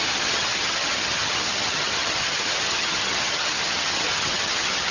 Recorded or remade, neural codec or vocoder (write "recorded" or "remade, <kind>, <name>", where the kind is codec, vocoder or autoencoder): remade, vocoder, HiFi-GAN